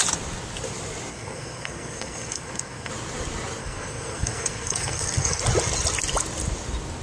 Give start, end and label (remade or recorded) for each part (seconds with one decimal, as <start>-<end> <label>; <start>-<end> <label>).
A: 0.0-1.1 recorded; 1.1-2.9 remade; 2.9-3.6 recorded; 3.6-5.4 remade; 5.4-7.0 recorded

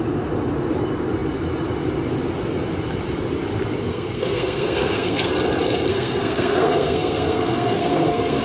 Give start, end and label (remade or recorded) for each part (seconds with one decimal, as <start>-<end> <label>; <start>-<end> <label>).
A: 0.0-3.9 recorded; 3.9-5.3 remade; 5.3-5.9 recorded; 5.9-8.4 remade

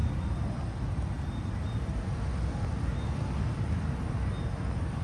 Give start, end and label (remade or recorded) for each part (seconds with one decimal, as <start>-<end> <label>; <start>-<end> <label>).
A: 0.0-5.0 recorded

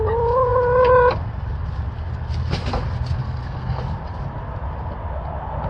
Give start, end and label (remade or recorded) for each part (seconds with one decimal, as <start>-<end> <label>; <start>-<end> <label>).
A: 0.0-3.2 recorded; 3.2-3.8 remade; 3.8-5.7 recorded

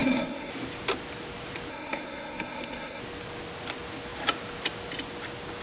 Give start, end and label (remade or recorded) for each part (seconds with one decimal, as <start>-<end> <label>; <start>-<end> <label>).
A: 0.0-0.5 remade; 0.5-1.7 recorded; 1.7-3.0 remade; 3.0-5.6 recorded

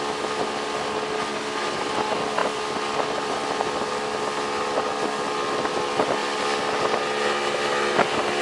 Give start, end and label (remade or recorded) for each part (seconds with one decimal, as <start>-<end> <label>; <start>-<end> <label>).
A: 0.0-8.4 recorded

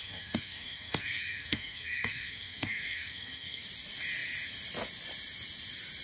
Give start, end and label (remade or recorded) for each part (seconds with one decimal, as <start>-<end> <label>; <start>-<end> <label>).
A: 0.0-3.6 remade; 3.6-6.0 recorded

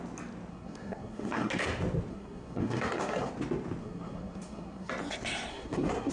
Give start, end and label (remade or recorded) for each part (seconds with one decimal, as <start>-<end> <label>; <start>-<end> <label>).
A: 0.0-0.5 recorded; 0.5-1.5 remade; 1.5-2.1 recorded; 2.1-3.3 remade; 3.3-3.8 recorded; 3.8-4.9 remade; 4.9-5.5 recorded; 5.5-6.1 remade